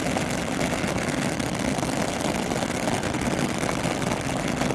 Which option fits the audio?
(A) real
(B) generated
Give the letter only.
A